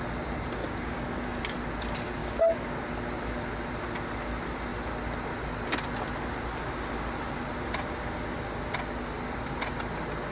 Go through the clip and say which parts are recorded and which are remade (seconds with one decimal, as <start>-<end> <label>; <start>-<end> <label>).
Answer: 0.0-0.6 recorded; 0.6-1.4 remade; 1.4-2.2 recorded; 2.2-2.8 remade; 2.8-10.3 recorded